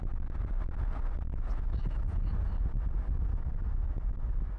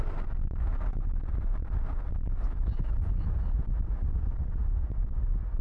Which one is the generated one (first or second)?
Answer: second